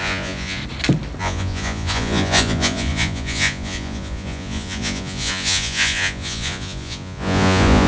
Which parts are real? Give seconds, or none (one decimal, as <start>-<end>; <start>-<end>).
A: 0.6-1.2